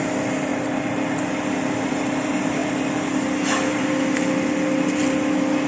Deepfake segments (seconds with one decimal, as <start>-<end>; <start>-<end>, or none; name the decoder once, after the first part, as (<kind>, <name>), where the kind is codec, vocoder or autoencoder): none